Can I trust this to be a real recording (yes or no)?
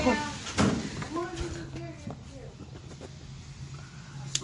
yes